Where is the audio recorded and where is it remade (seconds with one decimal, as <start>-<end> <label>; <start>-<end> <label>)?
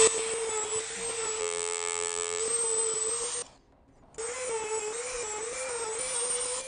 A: 0.0-1.4 recorded; 1.4-2.4 remade; 2.4-6.7 recorded